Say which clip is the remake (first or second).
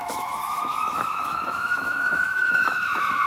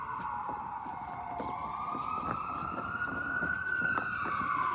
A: first